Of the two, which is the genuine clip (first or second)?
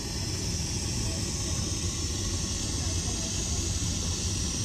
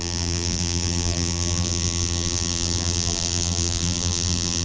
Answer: first